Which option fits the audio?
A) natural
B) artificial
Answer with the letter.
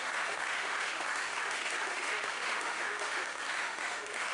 B